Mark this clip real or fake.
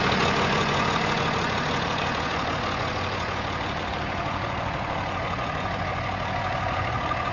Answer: fake